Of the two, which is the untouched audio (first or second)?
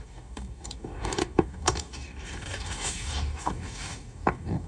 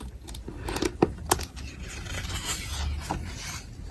second